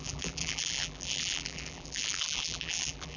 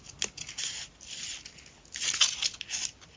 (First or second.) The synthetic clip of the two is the first